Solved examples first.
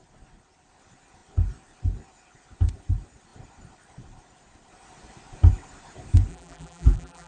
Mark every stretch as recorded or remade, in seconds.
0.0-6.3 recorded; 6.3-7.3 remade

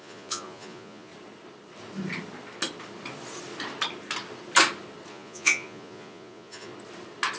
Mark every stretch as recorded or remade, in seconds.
0.0-1.1 remade; 1.1-5.1 recorded; 5.1-6.7 remade; 6.7-7.4 recorded

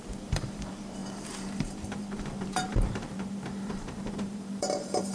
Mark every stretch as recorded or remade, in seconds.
0.0-5.1 remade

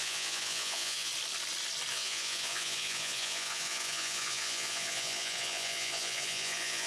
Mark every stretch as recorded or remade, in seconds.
0.0-1.1 remade; 1.1-1.9 recorded; 1.9-6.9 remade

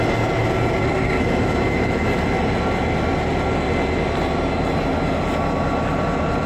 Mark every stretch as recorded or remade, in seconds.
0.0-0.8 recorded; 0.8-1.3 remade; 1.3-6.5 recorded

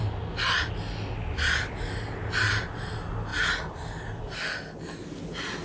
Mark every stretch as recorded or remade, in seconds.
0.0-5.6 recorded

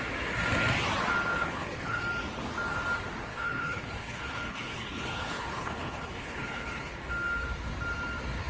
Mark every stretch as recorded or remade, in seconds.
0.0-1.3 recorded; 1.3-2.0 remade; 2.0-3.3 recorded; 3.3-7.1 remade; 7.1-8.5 recorded

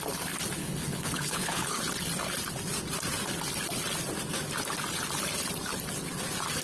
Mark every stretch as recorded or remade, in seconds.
0.0-0.6 recorded; 0.6-1.8 remade; 1.8-6.6 recorded